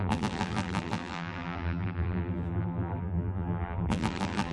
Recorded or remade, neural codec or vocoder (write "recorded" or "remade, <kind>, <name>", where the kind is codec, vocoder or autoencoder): remade, vocoder, BigVGAN v2